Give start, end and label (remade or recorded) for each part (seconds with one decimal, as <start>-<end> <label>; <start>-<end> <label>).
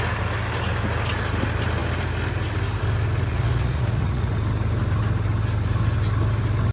0.0-3.3 recorded; 3.3-4.3 remade; 4.3-6.7 recorded